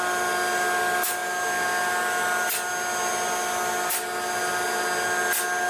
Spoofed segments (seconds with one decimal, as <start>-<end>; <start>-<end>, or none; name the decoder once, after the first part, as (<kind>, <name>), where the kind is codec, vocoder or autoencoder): none